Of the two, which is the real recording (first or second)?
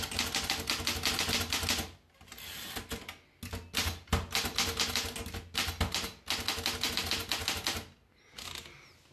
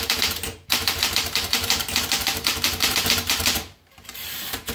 first